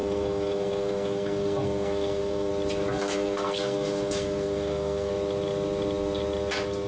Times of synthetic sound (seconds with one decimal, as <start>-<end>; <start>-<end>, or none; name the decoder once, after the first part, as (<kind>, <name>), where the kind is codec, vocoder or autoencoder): 0.0-2.5 (codec, SNAC); 2.9-5.1